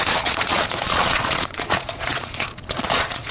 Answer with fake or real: fake